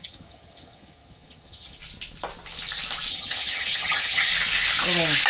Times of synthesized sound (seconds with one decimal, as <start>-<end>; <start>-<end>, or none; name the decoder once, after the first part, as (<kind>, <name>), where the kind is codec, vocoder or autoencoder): 0.0-1.8 (vocoder, HiFi-GAN); 3.1-4.3